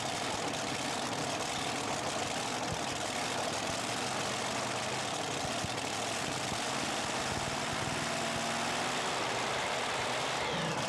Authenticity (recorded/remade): recorded